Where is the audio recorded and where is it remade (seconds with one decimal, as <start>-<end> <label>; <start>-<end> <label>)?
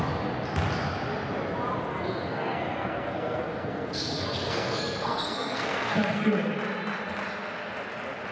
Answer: 0.0-1.9 recorded; 1.9-6.5 remade; 6.5-8.3 recorded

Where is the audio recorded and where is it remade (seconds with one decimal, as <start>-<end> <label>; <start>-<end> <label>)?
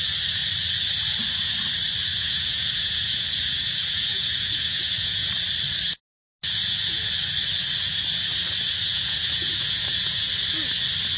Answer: 0.0-2.1 recorded; 2.1-5.3 remade; 5.3-6.6 recorded; 6.6-7.1 remade; 7.1-8.9 recorded; 8.9-10.3 remade; 10.3-11.2 recorded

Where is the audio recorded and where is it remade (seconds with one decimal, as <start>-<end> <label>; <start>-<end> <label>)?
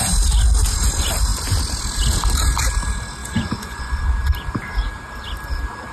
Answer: 0.0-3.2 recorded; 3.2-4.0 remade; 4.0-5.9 recorded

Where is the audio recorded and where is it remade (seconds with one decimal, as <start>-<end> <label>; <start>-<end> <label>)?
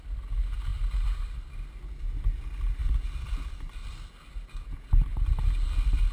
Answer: 0.0-0.7 recorded; 0.7-1.5 remade; 1.5-6.1 recorded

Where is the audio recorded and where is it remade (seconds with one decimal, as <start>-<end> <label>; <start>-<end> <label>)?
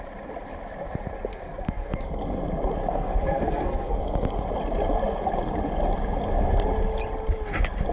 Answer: 0.0-1.3 recorded; 1.3-2.1 remade; 2.1-2.8 recorded; 2.8-4.0 remade; 4.0-7.9 recorded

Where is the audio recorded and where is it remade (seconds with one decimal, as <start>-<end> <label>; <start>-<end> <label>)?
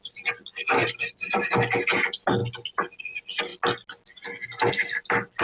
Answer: 0.0-0.8 recorded; 0.8-1.5 remade; 1.5-5.4 recorded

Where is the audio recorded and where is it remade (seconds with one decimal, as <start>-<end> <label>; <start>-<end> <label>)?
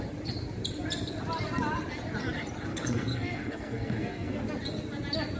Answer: 0.0-2.7 recorded; 2.7-4.4 remade; 4.4-5.4 recorded